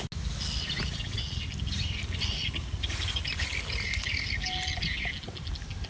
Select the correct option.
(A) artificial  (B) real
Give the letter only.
B